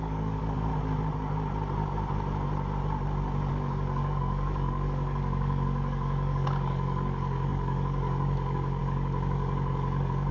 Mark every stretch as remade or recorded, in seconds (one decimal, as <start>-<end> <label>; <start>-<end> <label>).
0.0-0.7 remade; 0.7-3.5 recorded; 3.5-10.3 remade